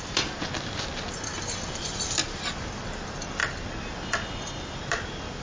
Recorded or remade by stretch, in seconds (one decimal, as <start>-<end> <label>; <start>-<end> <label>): 0.0-5.4 recorded